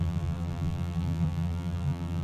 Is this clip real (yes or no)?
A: no